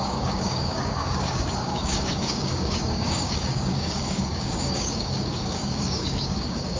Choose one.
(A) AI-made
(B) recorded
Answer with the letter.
A